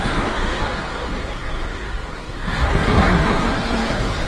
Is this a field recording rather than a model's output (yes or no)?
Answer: no